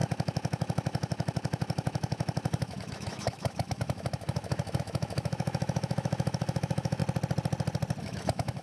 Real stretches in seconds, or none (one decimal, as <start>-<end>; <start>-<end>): 7.0-8.0